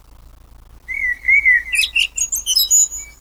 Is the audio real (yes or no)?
yes